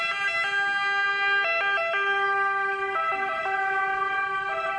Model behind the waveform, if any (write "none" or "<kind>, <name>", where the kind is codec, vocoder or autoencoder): none